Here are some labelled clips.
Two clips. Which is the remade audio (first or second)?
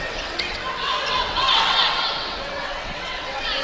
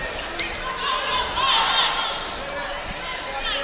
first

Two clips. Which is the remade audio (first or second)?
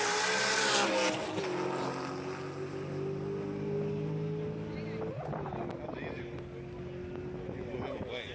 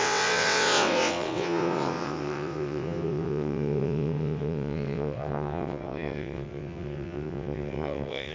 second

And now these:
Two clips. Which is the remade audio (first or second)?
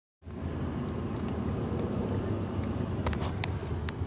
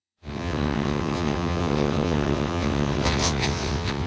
second